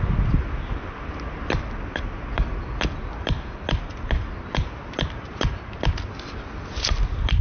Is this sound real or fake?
real